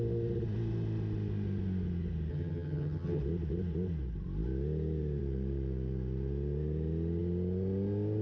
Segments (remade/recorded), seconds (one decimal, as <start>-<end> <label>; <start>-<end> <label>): 0.0-2.3 recorded; 2.3-3.2 remade; 3.2-8.2 recorded